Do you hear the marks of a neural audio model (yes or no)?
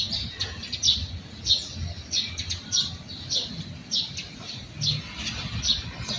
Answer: no